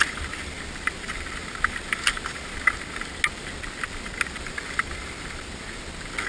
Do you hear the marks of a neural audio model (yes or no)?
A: no